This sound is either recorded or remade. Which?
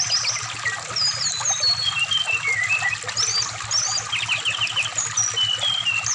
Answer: recorded